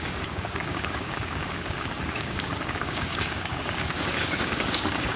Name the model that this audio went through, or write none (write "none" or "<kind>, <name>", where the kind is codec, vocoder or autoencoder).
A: codec, DAC